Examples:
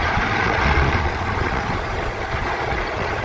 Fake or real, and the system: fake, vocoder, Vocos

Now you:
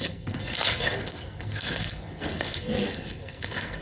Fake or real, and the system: fake, codec, SNAC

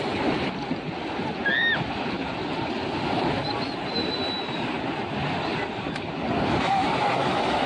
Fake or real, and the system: real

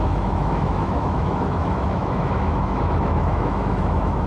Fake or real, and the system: fake, autoencoder, DAC-VAE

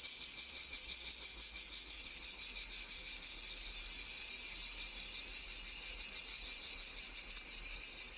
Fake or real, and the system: real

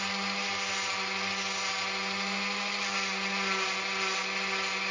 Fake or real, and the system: real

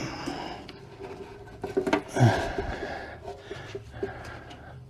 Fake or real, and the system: real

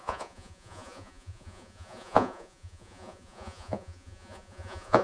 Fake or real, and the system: fake, vocoder, Vocos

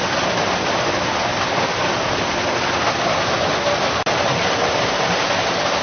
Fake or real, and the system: real